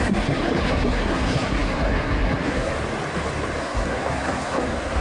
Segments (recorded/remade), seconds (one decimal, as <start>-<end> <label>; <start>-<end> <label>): 0.0-2.7 remade; 2.7-3.6 recorded; 3.6-5.0 remade